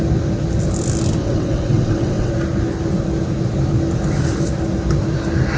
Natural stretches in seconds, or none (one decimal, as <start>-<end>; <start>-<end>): 0.0-1.2; 2.3-5.6